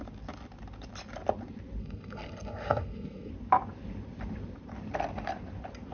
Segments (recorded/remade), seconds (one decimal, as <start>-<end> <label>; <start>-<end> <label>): 0.0-1.8 recorded; 1.8-3.3 remade; 3.3-5.9 recorded